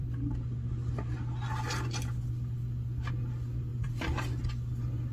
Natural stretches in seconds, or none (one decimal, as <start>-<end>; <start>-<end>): 0.0-3.7; 4.4-5.1